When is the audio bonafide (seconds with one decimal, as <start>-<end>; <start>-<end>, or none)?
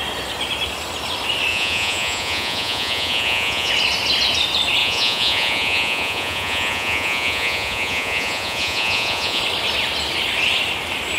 0.0-1.5; 3.7-4.8; 9.4-11.2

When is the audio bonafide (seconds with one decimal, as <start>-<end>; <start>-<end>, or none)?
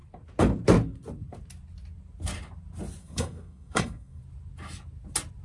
0.0-3.0; 4.2-5.4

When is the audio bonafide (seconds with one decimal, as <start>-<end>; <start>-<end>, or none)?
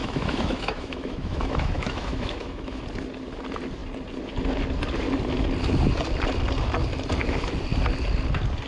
2.8-8.7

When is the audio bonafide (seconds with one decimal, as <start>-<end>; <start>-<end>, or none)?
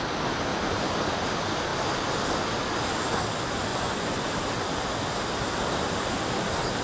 0.0-3.7; 4.3-6.8